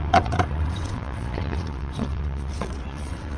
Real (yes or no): no